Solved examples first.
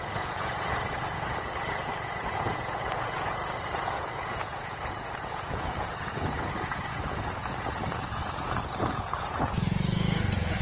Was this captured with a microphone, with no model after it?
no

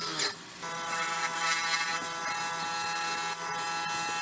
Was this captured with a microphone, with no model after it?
yes